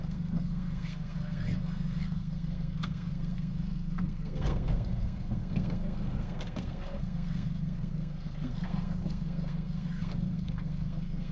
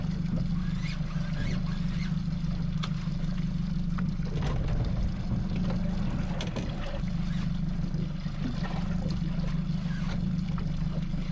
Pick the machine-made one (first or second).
first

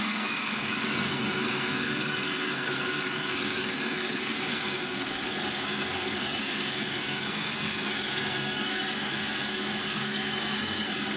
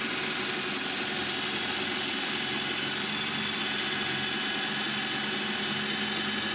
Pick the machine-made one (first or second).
first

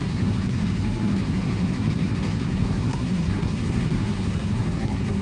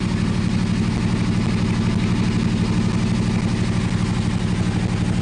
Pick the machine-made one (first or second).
first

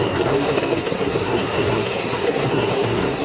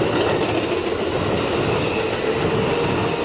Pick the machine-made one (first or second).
first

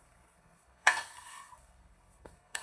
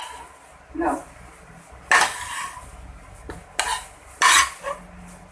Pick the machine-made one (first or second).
first